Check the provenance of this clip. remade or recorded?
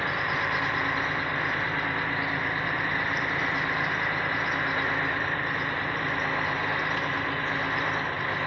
recorded